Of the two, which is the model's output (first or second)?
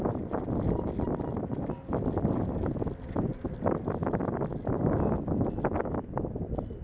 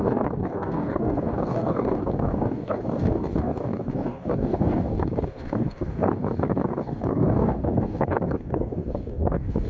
second